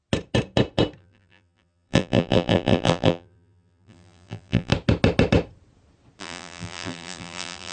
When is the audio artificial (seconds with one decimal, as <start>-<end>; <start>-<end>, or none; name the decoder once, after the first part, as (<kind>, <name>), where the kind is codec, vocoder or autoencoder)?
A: 1.0-4.7 (vocoder, BigVGAN v2); 6.2-7.7